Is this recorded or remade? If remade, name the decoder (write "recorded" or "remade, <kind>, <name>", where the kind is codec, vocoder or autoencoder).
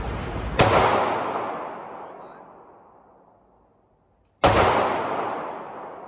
recorded